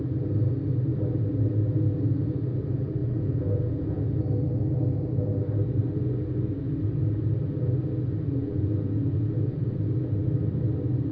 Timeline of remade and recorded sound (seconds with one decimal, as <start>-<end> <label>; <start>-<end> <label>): 0.0-3.0 recorded; 3.0-4.0 remade; 4.0-8.4 recorded; 8.4-9.8 remade; 9.8-11.1 recorded